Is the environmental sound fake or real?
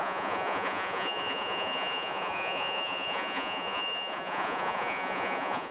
fake